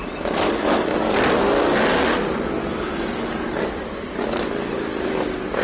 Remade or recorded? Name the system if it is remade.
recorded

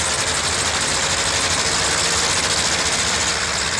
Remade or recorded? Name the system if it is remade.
recorded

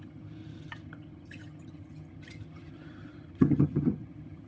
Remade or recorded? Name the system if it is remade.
remade, vocoder, HiFi-GAN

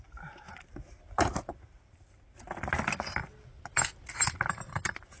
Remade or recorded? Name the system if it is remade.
recorded